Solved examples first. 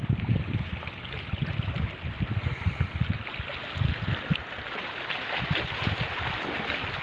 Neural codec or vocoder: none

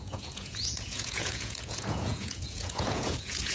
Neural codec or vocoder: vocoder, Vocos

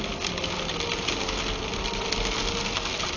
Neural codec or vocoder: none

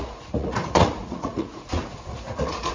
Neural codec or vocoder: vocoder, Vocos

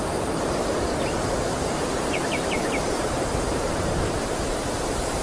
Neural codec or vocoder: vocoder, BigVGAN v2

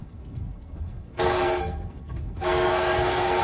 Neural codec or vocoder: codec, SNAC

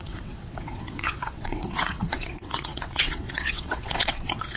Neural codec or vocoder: vocoder, WaveNeXt